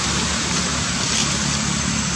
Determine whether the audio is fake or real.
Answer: real